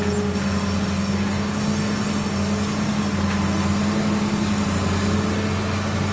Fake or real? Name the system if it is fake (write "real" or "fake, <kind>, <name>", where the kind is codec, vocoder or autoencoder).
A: real